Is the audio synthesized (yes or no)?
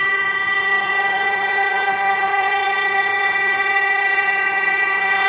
yes